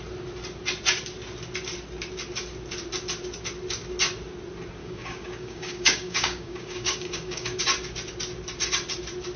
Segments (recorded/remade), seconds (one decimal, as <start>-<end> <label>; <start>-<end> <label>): 0.0-4.8 recorded; 4.8-7.6 remade; 7.6-9.4 recorded